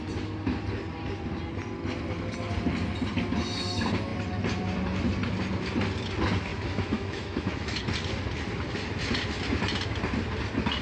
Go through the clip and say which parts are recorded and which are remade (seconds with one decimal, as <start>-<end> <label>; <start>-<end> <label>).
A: 0.0-6.5 recorded; 6.5-7.8 remade; 7.8-10.8 recorded